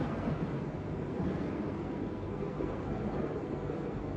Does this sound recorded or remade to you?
remade